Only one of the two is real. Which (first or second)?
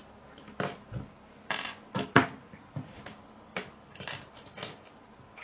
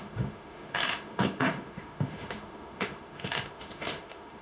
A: first